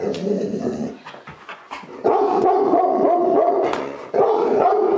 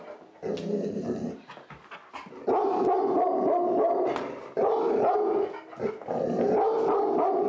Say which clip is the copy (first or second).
first